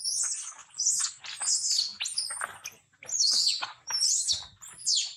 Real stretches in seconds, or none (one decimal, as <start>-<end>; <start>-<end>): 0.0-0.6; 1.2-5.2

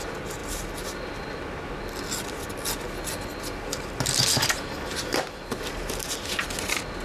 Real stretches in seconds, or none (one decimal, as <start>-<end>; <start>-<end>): 0.0-7.0

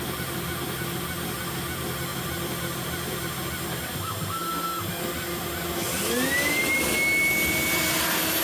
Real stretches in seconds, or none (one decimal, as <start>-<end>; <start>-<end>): 0.0-8.4